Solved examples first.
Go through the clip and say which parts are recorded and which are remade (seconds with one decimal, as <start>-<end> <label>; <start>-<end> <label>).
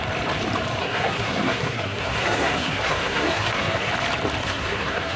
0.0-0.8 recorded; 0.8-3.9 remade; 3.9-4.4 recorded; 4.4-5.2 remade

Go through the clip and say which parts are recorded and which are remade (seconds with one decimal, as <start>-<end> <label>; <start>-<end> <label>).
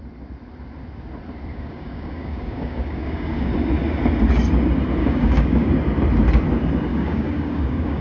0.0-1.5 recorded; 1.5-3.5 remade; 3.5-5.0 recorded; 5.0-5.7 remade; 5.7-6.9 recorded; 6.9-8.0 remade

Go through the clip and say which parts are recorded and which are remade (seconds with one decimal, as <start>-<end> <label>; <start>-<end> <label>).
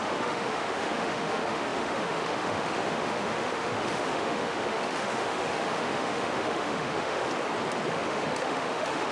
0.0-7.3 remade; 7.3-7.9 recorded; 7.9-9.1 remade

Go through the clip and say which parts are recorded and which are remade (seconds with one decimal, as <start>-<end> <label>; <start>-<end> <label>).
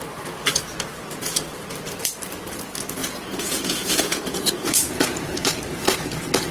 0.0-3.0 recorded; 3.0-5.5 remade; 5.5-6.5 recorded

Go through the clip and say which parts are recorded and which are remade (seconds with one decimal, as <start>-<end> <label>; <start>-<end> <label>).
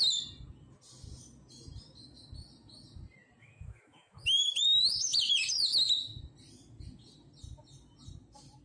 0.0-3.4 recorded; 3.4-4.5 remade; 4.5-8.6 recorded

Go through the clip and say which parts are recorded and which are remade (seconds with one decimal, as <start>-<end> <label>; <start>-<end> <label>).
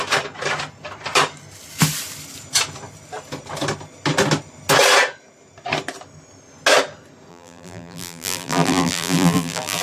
0.0-7.3 recorded; 7.3-9.8 remade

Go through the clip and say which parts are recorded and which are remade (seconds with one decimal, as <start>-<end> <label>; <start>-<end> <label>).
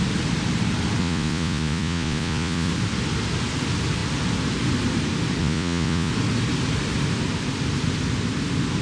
0.0-1.0 recorded; 1.0-2.7 remade; 2.7-5.4 recorded; 5.4-6.1 remade; 6.1-8.8 recorded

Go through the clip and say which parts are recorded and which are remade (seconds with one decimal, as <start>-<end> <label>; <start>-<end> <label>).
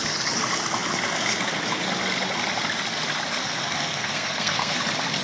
0.0-3.4 recorded; 3.4-4.8 remade; 4.8-5.2 recorded